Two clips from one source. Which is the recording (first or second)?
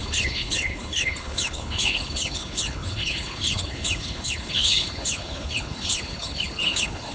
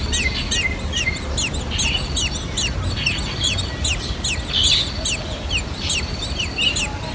second